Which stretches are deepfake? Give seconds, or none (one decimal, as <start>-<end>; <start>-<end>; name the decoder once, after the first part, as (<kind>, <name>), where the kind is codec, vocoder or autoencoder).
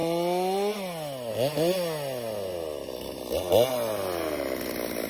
none